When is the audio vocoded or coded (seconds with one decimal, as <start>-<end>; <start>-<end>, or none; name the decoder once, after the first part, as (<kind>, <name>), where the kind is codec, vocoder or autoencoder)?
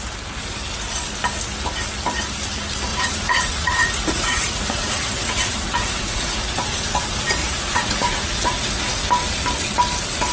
2.9-6.4 (vocoder, Vocos); 7.4-8.7